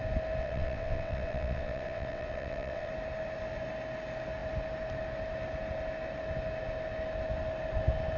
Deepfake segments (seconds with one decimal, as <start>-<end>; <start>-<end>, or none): 0.4-2.9